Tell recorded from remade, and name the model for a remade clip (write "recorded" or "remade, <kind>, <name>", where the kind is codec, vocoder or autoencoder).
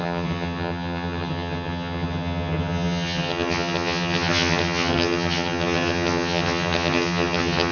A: remade, vocoder, HiFi-GAN